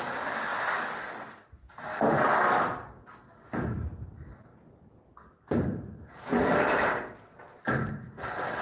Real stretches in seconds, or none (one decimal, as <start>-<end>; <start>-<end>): 0.0-4.5; 7.6-8.6